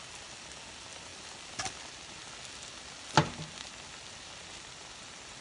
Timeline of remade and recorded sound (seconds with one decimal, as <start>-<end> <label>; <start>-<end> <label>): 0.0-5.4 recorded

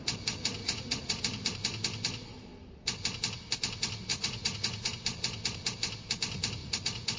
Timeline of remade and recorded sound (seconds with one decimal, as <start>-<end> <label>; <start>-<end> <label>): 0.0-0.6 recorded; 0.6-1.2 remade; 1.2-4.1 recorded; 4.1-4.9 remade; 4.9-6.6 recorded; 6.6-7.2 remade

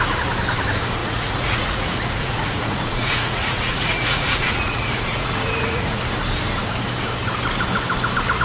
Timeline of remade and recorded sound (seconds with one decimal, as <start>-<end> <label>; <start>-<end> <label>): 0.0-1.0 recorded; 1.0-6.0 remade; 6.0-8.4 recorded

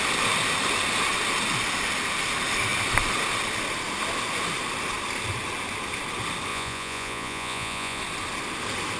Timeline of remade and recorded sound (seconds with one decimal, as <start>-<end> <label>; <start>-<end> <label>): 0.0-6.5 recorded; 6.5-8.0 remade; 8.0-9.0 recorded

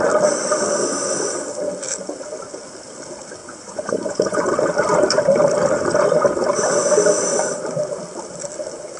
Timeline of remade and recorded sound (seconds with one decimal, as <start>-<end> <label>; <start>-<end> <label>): 0.0-3.4 recorded; 3.4-4.5 remade; 4.5-9.0 recorded

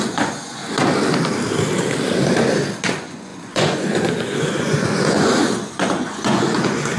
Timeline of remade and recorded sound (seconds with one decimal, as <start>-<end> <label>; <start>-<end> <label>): 0.0-0.6 remade; 0.6-2.9 recorded; 2.9-7.0 remade

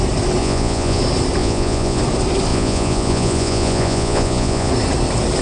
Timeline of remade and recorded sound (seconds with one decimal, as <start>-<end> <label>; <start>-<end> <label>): 0.0-0.4 recorded; 0.4-1.0 remade; 1.0-1.4 recorded; 1.4-2.0 remade; 2.0-2.5 recorded; 2.5-4.7 remade; 4.7-5.4 recorded